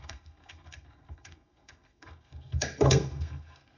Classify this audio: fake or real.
fake